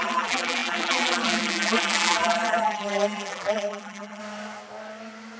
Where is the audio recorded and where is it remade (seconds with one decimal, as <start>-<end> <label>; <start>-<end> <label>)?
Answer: 0.0-4.2 remade; 4.2-5.4 recorded